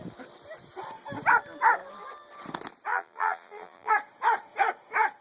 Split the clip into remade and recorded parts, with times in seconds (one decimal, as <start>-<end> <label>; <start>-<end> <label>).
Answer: 0.0-2.9 recorded; 2.9-3.9 remade; 3.9-5.2 recorded